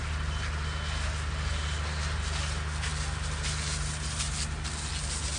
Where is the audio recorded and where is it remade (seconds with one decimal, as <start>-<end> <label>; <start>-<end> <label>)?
0.0-5.4 recorded